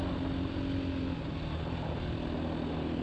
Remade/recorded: recorded